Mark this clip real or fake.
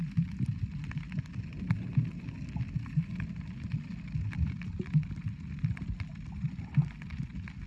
real